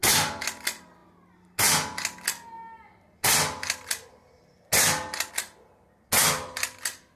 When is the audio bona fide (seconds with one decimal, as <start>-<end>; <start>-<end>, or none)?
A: 0.0-7.2